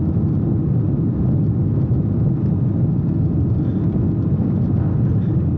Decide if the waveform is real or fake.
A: real